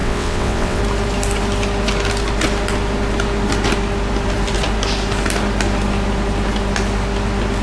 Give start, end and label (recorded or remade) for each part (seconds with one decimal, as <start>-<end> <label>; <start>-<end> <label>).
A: 0.0-0.8 remade; 0.8-7.6 recorded